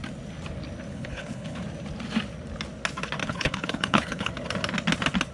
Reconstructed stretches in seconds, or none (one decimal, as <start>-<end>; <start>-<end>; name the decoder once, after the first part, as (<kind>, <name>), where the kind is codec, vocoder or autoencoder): 0.9-1.6 (codec, HILCodec); 3.2-4.3